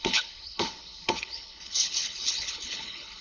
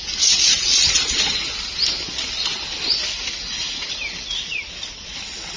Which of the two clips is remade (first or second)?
first